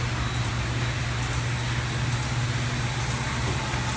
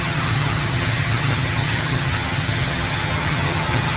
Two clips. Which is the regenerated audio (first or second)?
second